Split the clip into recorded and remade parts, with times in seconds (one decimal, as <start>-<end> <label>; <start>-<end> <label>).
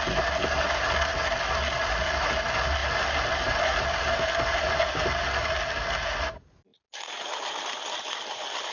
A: 0.0-8.7 recorded